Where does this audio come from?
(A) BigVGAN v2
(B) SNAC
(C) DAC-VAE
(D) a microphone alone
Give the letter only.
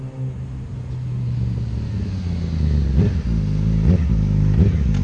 D